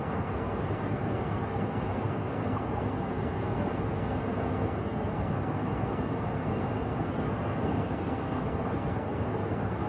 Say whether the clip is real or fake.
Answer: fake